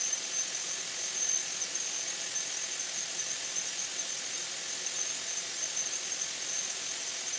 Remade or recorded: recorded